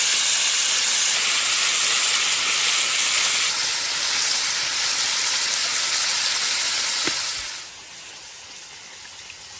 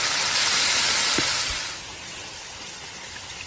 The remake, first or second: second